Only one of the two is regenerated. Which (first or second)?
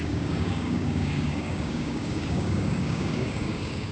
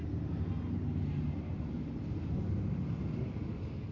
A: first